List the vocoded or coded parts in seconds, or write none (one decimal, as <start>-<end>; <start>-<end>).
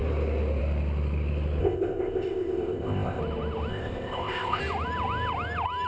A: 1.6-3.2; 3.7-4.6